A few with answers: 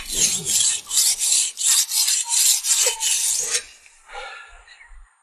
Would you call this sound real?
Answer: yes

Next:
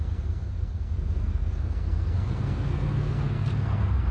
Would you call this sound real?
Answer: no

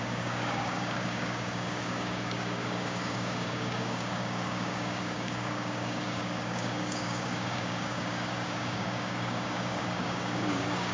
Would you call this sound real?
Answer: no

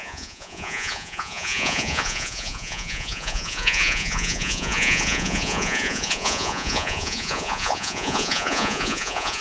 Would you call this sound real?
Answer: no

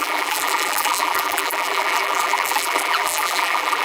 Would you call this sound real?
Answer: no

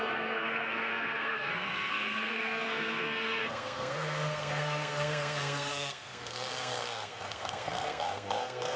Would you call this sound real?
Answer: no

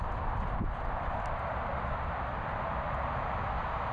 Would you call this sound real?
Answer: yes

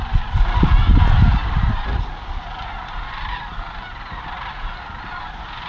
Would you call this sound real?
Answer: yes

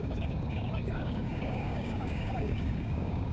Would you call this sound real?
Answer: no